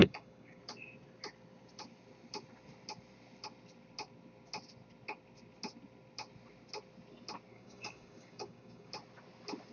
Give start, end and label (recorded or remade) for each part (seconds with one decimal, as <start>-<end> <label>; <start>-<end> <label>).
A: 0.0-0.6 remade; 0.6-7.5 recorded; 7.5-8.9 remade; 8.9-9.7 recorded